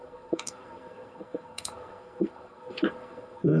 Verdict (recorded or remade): remade